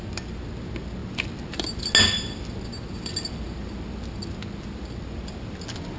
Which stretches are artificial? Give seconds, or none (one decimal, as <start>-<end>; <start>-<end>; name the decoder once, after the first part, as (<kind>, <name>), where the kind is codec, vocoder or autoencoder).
none